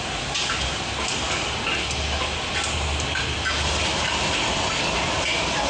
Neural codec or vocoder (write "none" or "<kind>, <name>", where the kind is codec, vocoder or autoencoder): none